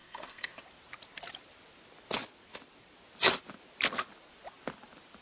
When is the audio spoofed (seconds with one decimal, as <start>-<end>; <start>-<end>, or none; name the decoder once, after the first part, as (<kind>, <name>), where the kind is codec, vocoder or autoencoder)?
0.0-0.6 (codec, SNAC)